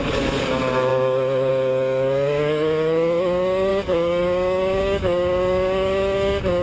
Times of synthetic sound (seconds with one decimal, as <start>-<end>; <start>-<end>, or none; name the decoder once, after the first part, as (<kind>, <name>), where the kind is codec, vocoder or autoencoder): 0.0-6.6 (codec, DAC)